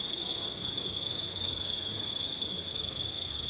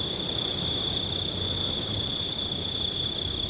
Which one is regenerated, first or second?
first